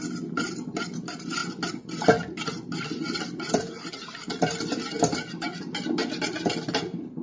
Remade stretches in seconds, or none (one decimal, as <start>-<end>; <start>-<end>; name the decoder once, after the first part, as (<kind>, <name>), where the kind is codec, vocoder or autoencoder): none